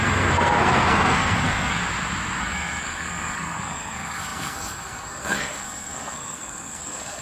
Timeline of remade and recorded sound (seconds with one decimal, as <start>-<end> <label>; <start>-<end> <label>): 0.0-1.8 remade; 1.8-2.4 recorded; 2.4-7.2 remade